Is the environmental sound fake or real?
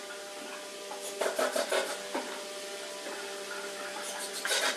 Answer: real